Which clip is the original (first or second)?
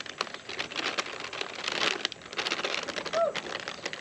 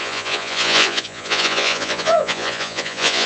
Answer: first